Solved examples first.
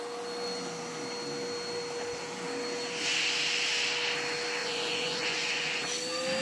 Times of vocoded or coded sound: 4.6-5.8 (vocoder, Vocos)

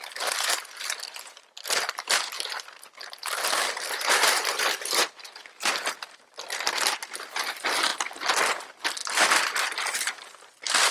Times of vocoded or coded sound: 0.0-7.9 (vocoder, BigVGAN v2); 8.6-10.9

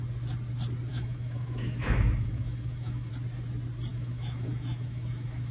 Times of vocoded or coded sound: 0.9-3.1 (autoencoder, DAC-VAE); 3.9-5.5